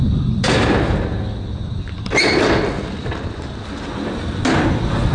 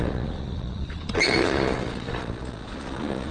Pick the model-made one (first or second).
second